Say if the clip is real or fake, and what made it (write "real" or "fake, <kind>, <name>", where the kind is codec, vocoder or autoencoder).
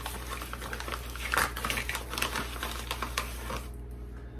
real